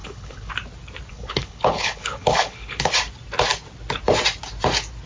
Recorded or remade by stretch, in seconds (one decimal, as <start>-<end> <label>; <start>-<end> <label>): 0.0-0.5 remade; 0.5-1.1 recorded; 1.1-2.9 remade; 2.9-5.1 recorded